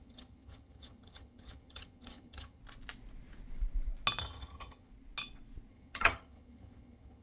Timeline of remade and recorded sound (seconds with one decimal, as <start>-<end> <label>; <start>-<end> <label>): 0.0-2.6 remade; 2.6-4.2 recorded; 4.2-4.9 remade; 4.9-5.7 recorded; 5.7-7.2 remade